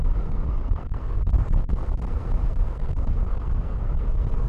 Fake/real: fake